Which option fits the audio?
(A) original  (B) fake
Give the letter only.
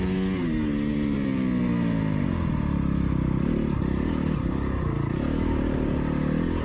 A